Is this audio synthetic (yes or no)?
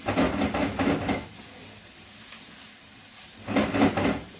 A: no